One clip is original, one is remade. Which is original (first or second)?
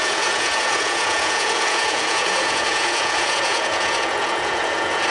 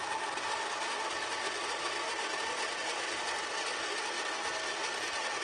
second